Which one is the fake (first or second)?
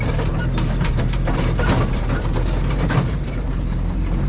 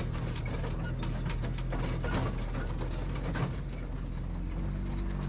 first